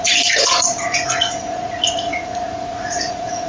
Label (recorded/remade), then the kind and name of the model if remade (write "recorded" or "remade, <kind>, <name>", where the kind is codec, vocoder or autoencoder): remade, vocoder, Vocos